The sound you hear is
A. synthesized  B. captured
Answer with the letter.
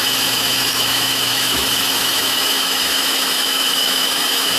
A